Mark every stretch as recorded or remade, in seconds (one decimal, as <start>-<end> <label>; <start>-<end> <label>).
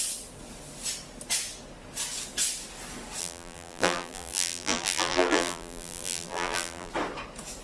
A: 0.0-3.2 recorded; 3.2-6.9 remade; 6.9-7.6 recorded